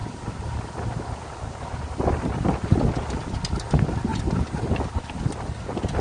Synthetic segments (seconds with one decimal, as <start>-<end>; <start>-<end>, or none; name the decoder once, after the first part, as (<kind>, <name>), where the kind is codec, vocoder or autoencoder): none